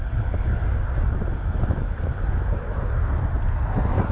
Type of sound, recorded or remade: recorded